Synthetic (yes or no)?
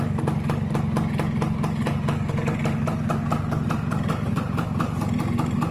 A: no